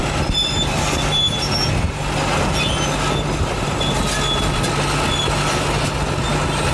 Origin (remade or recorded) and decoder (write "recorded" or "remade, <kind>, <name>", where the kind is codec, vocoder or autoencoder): recorded